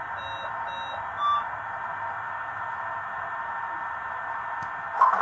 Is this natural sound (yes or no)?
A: yes